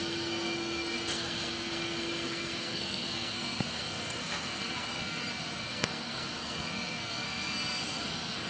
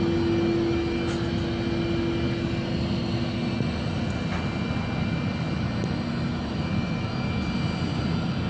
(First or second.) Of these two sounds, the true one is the second